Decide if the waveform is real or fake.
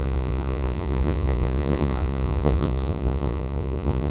fake